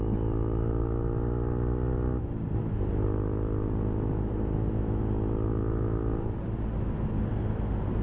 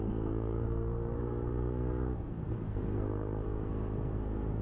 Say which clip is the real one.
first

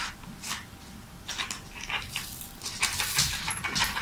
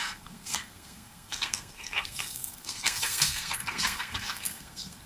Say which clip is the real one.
first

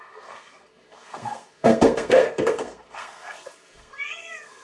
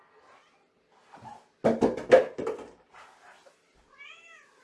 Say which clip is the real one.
second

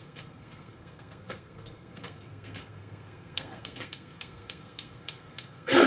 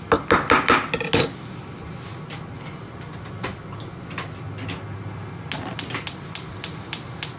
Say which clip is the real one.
second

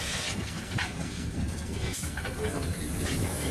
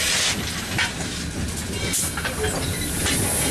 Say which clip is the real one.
second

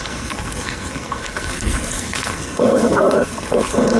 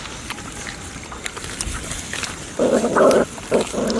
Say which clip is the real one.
second